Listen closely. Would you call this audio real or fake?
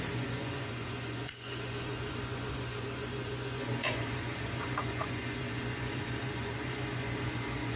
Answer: fake